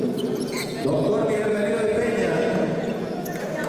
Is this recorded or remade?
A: remade